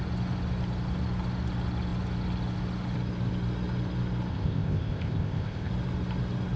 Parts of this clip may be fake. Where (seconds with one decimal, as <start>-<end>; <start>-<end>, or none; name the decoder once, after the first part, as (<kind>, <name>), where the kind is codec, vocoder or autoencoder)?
4.3-5.7 (codec, ZipCodec)